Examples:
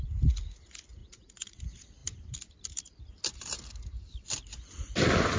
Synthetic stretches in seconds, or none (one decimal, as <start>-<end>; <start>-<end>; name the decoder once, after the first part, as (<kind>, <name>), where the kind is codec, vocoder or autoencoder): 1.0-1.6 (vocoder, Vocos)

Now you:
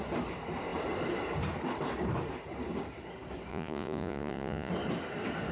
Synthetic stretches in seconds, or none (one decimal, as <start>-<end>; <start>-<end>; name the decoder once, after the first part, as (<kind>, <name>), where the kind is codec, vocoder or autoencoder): 3.5-4.7 (vocoder, Vocos)

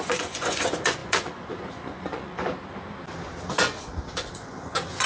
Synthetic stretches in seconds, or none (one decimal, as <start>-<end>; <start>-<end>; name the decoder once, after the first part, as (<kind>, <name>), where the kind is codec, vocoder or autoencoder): 0.0-2.4 (vocoder, Vocos); 3.5-5.1

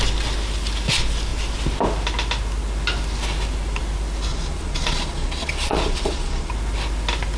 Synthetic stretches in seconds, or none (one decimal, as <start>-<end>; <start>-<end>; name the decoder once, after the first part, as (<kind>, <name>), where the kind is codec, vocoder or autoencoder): 4.3-6.5 (vocoder, Vocos)